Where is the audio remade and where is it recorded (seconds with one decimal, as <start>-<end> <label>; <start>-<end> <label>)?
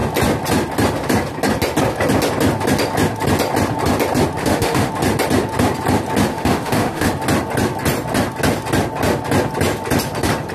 0.0-4.4 recorded; 4.4-4.9 remade; 4.9-6.3 recorded; 6.3-7.1 remade; 7.1-10.5 recorded